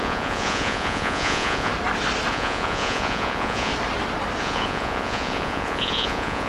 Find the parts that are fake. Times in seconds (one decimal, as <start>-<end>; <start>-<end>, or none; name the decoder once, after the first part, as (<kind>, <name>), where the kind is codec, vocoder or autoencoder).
0.0-1.7 (vocoder, Vocos); 2.3-3.7; 4.4-6.5